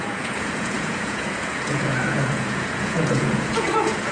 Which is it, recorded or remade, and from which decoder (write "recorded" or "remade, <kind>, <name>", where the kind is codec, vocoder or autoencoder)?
remade, vocoder, Vocos